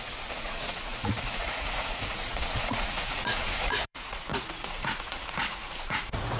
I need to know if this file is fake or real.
fake